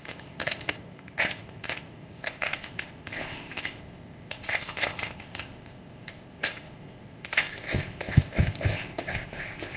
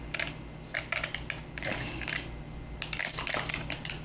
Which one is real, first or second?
second